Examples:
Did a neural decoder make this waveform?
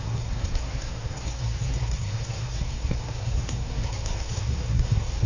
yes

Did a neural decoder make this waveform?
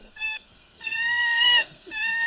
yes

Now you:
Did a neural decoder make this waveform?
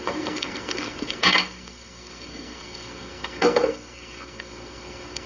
yes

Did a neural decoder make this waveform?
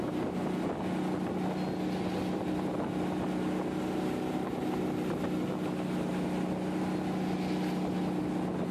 no